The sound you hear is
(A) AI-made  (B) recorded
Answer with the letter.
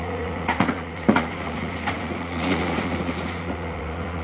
A